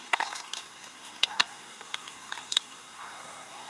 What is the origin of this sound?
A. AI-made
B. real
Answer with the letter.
A